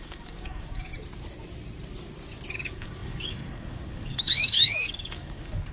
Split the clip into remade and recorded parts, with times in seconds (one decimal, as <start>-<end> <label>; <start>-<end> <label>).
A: 0.0-0.9 remade; 0.9-2.5 recorded; 2.5-5.7 remade